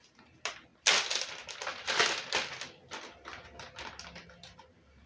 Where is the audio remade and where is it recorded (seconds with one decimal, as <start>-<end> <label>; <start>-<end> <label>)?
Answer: 0.0-5.1 recorded